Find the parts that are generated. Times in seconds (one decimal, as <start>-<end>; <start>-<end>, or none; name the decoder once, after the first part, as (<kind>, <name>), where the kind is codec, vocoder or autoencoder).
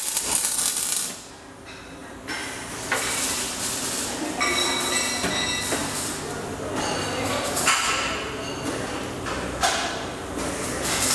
2.0-4.7 (vocoder, BigVGAN v2); 5.8-6.7